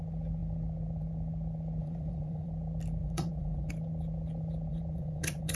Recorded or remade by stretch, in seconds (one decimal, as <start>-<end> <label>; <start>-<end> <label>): 0.0-1.8 recorded; 1.8-2.5 remade; 2.5-3.0 recorded; 3.0-3.7 remade; 3.7-4.7 recorded; 4.7-5.6 remade